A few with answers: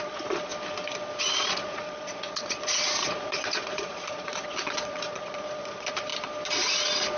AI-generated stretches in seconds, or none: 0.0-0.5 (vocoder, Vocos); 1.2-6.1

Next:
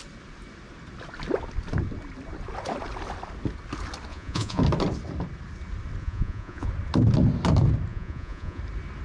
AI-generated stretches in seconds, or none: 4.1-4.6 (vocoder, Vocos); 6.0-6.7; 7.9-8.6

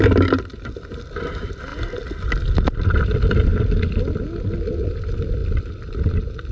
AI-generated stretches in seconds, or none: none